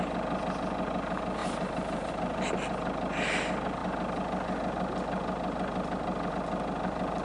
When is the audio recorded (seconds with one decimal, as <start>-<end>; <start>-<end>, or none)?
0.0-1.4; 2.1-7.2

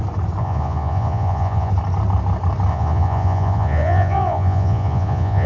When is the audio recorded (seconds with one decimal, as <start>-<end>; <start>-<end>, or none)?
0.0-0.4; 1.7-2.7

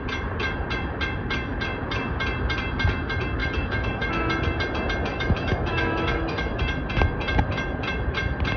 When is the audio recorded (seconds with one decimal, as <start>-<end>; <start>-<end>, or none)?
0.0-3.4; 4.1-5.1; 6.6-8.6

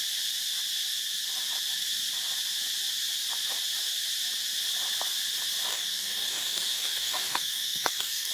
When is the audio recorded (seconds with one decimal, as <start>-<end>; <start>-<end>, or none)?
0.0-5.7